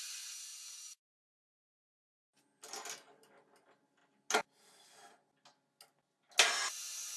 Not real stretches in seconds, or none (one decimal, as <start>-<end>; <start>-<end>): none